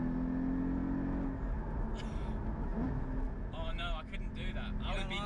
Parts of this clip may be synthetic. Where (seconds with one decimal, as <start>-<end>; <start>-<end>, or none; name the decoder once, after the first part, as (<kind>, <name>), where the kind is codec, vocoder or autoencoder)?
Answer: 2.7-3.3 (vocoder, BigVGAN v2)